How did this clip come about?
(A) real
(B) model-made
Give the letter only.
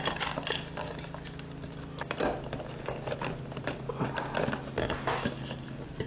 A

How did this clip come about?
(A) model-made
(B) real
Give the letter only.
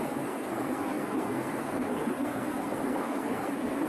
A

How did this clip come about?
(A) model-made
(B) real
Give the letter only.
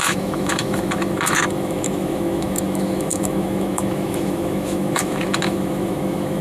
A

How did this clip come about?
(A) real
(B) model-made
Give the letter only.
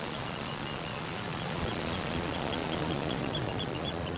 B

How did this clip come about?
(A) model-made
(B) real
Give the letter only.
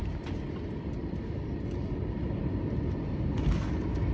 B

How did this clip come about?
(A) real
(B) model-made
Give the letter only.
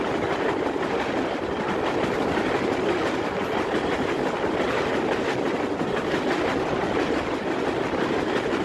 A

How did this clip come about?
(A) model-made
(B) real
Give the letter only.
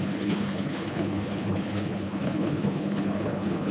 A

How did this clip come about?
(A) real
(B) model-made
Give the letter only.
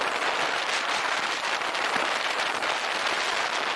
A